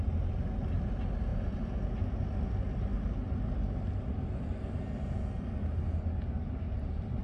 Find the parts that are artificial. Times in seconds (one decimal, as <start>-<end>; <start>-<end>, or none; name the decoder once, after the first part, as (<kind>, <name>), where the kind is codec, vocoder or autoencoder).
none